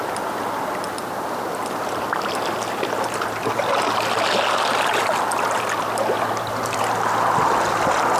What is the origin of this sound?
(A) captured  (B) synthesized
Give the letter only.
A